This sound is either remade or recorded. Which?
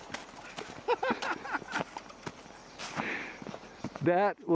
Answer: recorded